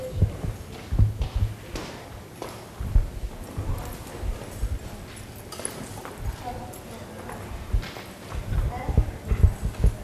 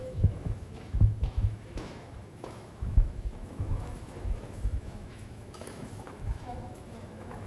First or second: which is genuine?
first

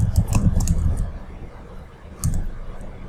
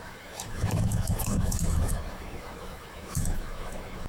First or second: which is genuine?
first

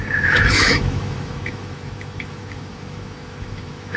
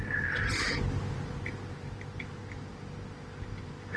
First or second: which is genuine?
second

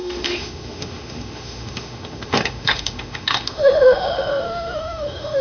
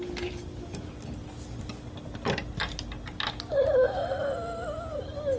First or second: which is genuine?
second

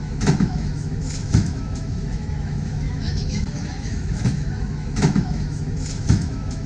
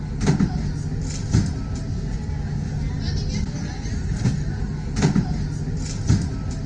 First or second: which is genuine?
second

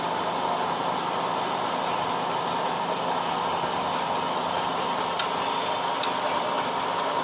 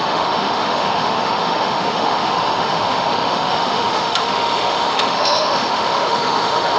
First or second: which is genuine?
first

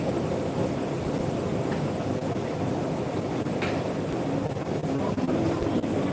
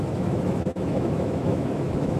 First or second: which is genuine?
first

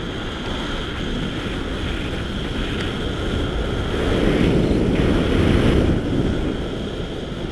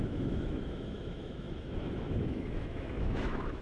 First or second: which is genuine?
first